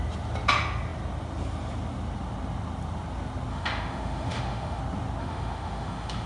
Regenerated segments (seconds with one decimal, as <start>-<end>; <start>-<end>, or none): 3.5-4.8; 5.2-6.3